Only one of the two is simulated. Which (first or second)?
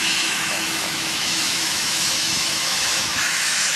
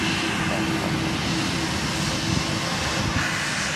first